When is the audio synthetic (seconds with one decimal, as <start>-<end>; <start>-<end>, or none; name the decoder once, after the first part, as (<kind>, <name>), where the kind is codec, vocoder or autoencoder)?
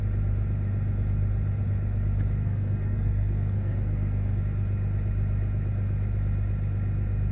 2.4-4.4 (codec, SNAC)